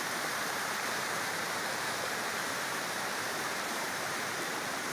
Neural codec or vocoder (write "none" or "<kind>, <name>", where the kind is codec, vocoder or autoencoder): vocoder, BigVGAN v2